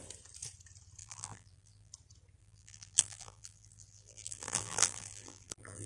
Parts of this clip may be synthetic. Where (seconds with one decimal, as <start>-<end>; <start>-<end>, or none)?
1.0-1.9; 2.4-5.9